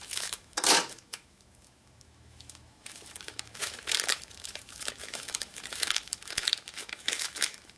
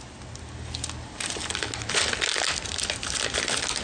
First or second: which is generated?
first